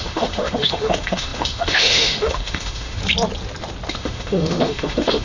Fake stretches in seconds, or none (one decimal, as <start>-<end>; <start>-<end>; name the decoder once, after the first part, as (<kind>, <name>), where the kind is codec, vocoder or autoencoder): 0.0-3.0 (autoencoder, DAC-VAE); 3.9-5.2